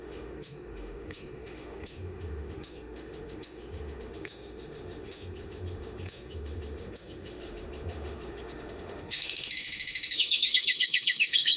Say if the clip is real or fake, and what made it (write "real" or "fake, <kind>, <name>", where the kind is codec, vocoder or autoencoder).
fake, autoencoder, DAC-VAE